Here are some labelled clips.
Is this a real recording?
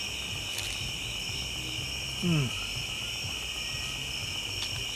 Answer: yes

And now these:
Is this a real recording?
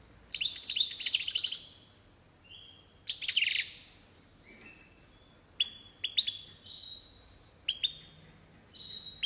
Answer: yes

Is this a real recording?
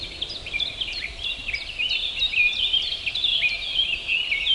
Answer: yes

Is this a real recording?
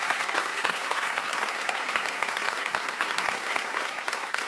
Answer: no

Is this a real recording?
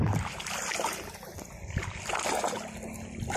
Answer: yes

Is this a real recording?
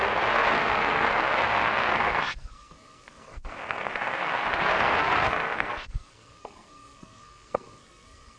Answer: no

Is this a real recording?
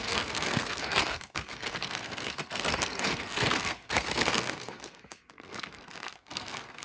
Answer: no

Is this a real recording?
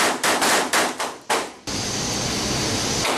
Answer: yes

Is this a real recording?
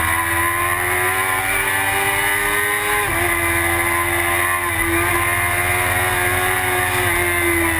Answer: yes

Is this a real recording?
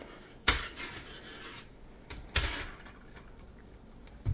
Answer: yes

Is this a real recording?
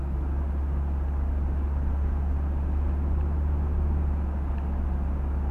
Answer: yes